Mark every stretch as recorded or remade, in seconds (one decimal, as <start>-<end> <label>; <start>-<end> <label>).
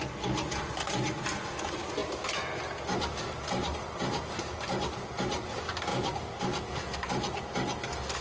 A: 0.0-8.2 recorded